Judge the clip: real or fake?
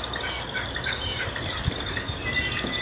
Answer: real